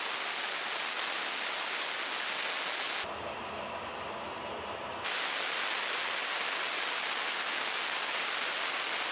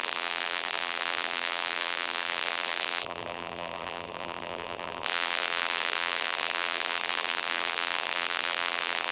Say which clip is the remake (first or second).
second